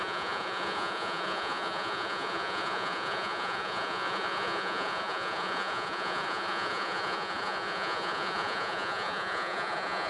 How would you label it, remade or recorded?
remade